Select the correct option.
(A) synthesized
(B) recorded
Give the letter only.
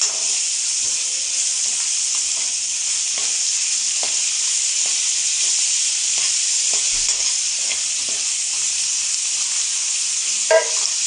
B